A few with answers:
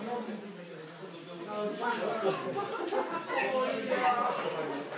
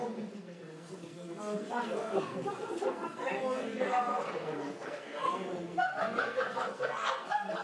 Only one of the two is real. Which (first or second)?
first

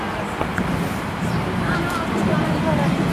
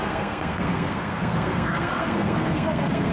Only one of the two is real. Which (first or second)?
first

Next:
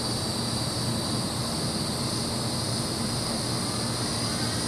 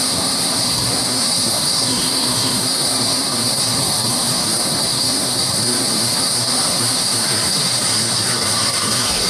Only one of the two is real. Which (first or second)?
first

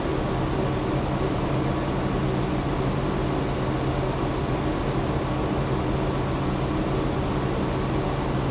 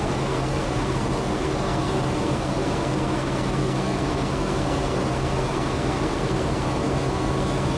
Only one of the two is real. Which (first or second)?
first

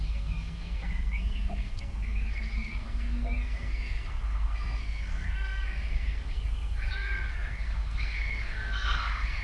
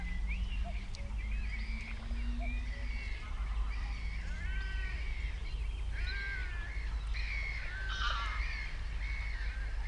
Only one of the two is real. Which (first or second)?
second